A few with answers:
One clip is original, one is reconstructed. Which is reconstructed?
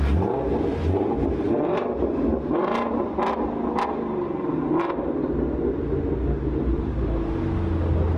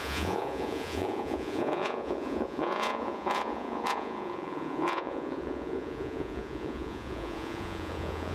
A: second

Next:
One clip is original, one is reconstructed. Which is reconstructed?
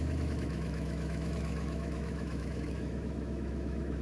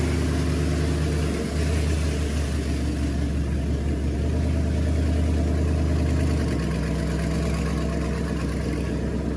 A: first